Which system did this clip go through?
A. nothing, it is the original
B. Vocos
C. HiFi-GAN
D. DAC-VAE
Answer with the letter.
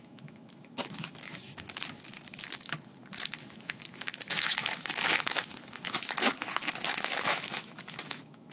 D